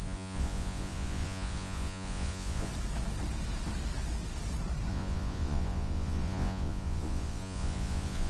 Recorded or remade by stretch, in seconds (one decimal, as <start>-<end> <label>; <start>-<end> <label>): 0.0-2.7 remade; 2.7-4.9 recorded; 4.9-8.3 remade

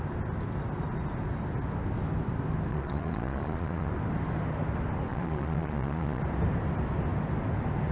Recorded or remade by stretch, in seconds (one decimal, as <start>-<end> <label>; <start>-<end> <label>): 0.0-2.7 recorded; 2.7-3.9 remade; 3.9-5.1 recorded; 5.1-6.2 remade; 6.2-7.9 recorded

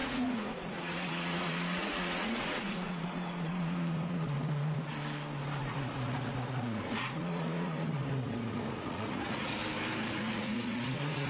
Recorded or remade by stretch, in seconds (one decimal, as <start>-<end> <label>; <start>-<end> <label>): 0.0-4.9 remade; 4.9-5.6 recorded; 5.6-9.6 remade; 9.6-10.1 recorded; 10.1-11.3 remade

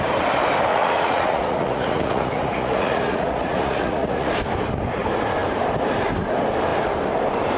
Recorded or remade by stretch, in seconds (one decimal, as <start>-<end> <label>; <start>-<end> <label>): 0.0-0.7 recorded; 0.7-4.3 remade; 4.3-7.6 recorded

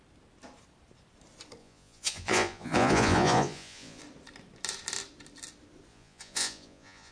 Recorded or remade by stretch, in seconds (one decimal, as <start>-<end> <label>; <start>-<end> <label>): 0.0-1.6 recorded; 1.6-4.0 remade; 4.0-5.9 recorded; 5.9-7.1 remade

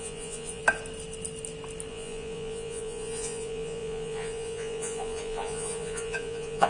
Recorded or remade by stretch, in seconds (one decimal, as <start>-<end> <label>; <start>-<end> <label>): 0.0-0.6 remade; 0.6-1.9 recorded; 1.9-6.7 remade

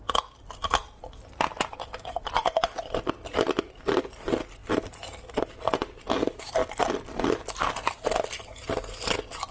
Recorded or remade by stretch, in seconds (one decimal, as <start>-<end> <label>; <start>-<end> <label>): 0.0-9.5 recorded